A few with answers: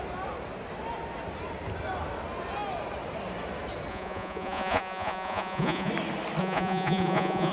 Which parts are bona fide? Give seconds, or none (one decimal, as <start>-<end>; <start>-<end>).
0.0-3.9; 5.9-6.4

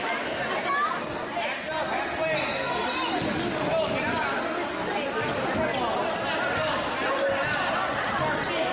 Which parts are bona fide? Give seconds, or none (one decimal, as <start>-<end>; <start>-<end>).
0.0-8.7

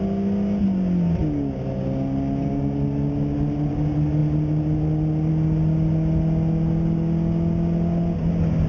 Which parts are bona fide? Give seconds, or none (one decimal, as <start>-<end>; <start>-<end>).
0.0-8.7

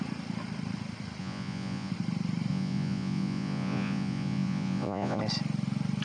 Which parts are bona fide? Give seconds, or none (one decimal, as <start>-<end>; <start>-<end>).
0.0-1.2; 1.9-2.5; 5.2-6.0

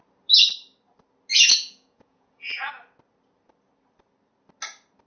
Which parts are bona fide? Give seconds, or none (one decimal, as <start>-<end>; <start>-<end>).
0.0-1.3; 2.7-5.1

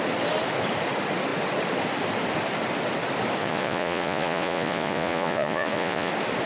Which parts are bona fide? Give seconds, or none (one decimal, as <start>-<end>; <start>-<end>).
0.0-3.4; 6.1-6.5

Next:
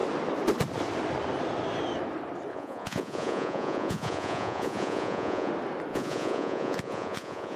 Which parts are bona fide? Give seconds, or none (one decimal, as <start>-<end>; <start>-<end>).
0.0-2.5; 5.5-5.9